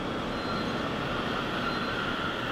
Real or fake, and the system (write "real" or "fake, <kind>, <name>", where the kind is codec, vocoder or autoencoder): real